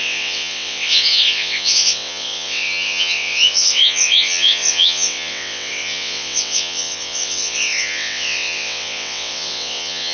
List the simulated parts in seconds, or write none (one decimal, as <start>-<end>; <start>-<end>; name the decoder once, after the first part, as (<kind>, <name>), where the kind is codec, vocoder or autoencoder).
0.0-10.1 (vocoder, WaveNeXt)